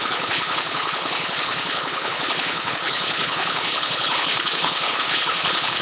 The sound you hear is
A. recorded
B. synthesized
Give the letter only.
B